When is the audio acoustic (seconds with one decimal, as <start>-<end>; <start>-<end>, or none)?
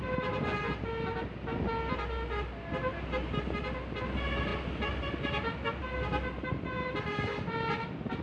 0.0-8.2